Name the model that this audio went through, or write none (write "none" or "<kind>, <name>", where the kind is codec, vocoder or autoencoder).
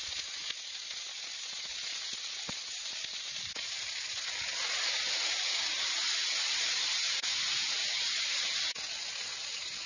none